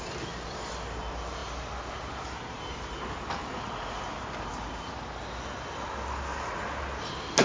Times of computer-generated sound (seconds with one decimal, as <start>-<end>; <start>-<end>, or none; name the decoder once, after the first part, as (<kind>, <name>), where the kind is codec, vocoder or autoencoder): none